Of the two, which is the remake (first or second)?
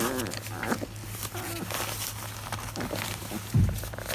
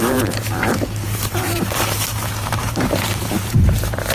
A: second